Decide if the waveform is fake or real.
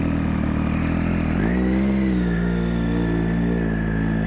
real